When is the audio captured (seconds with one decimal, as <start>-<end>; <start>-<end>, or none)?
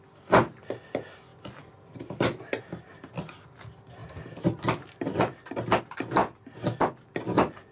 0.0-7.7